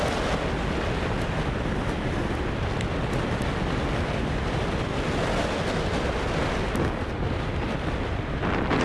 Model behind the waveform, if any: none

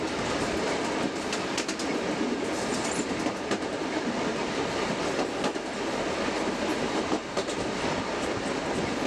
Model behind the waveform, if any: none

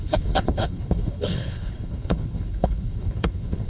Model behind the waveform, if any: codec, HILCodec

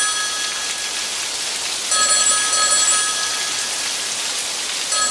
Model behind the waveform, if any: none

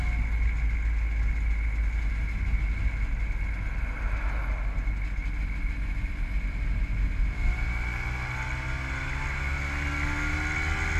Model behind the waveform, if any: none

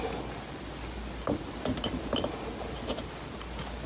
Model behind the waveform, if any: none